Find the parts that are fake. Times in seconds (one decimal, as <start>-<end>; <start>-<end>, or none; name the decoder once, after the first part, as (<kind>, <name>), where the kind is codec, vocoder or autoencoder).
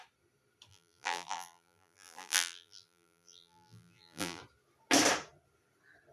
0.7-4.4 (vocoder, BigVGAN v2)